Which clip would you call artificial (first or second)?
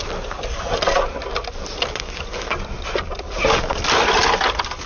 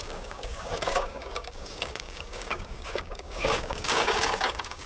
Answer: second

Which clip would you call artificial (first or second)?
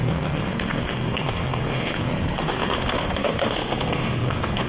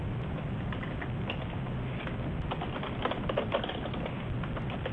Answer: first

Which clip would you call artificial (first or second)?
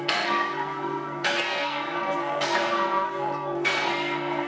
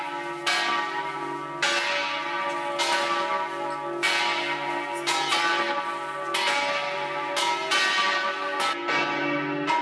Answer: first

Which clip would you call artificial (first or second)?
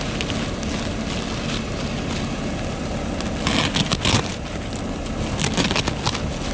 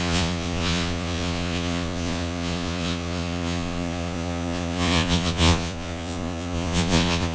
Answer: second